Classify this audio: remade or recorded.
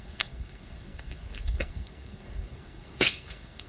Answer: remade